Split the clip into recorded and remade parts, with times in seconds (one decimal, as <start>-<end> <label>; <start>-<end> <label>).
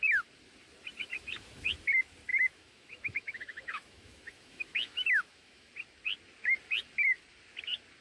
0.0-1.0 recorded; 1.0-1.7 remade; 1.7-2.3 recorded; 2.3-5.7 remade; 5.7-8.0 recorded